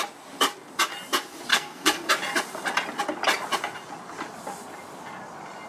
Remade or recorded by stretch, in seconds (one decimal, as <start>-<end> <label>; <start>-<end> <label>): 0.0-1.5 recorded; 1.5-2.1 remade; 2.1-5.7 recorded